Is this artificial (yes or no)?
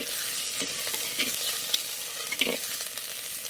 no